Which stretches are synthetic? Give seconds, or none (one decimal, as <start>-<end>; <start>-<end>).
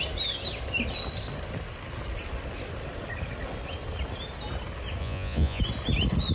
5.0-5.6